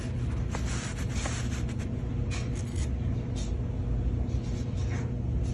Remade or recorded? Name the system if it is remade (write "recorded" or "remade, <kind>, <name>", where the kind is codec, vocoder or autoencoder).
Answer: recorded